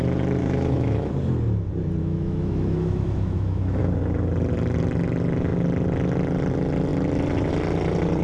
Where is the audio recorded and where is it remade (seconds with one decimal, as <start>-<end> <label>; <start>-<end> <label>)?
0.0-0.4 recorded; 0.4-1.1 remade; 1.1-2.0 recorded; 2.0-3.8 remade; 3.8-8.2 recorded